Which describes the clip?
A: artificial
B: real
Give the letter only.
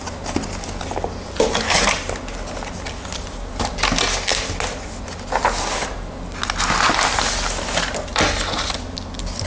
B